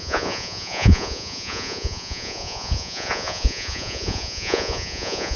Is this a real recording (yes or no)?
no